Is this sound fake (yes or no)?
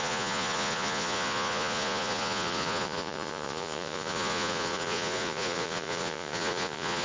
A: yes